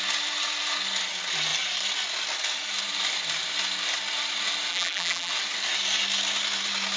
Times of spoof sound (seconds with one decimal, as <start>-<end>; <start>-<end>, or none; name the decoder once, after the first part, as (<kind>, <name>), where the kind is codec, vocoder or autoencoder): 4.7-5.3 (vocoder, BigVGAN v2)